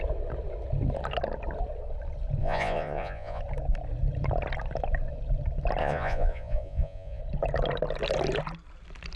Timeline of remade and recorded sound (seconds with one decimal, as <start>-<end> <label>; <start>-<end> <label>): 0.0-2.4 recorded; 2.4-3.4 remade; 3.4-5.8 recorded; 5.8-7.2 remade; 7.2-9.2 recorded